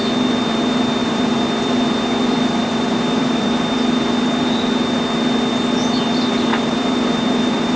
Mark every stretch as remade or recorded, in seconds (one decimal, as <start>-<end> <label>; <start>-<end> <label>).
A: 0.0-1.0 recorded; 1.0-4.3 remade; 4.3-6.5 recorded; 6.5-7.8 remade